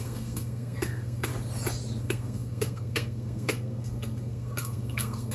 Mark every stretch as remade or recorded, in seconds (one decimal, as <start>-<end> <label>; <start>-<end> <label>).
0.0-1.3 remade; 1.3-2.0 recorded; 2.0-5.3 remade